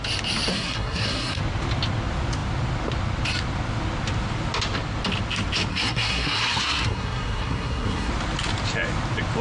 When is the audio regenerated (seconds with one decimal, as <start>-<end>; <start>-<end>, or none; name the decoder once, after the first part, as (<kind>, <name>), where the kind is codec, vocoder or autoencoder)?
0.5-1.4 (codec, SNAC); 5.7-8.1